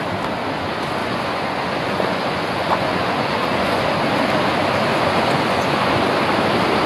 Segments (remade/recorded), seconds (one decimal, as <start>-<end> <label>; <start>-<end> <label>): 0.0-1.0 recorded; 1.0-3.8 remade; 3.8-4.9 recorded; 4.9-6.1 remade; 6.1-6.9 recorded